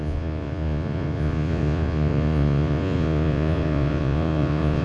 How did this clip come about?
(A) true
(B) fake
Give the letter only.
B